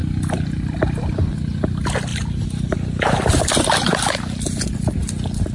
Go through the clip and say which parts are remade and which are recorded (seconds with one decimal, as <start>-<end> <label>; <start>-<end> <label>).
0.0-5.5 recorded